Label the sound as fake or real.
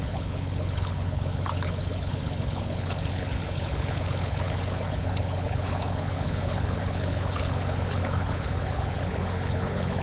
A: fake